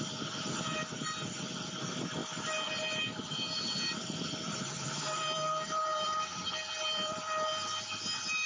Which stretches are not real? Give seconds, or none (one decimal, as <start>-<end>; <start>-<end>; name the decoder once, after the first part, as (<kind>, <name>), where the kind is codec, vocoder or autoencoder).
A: 0.0-2.2 (vocoder, BigVGAN v2); 3.0-8.5